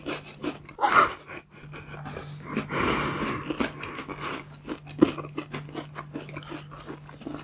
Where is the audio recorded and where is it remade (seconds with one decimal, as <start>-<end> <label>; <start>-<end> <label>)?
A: 0.0-7.4 recorded